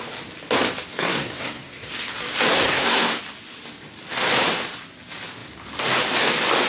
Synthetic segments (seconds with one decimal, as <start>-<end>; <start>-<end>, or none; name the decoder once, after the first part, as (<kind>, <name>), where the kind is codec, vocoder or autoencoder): 0.9-1.9 (codec, SNAC); 2.5-3.2